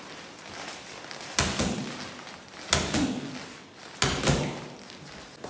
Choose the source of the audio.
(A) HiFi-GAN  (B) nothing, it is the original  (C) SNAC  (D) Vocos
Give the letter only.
B